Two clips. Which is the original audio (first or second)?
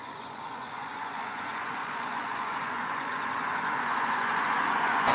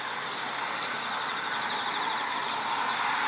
second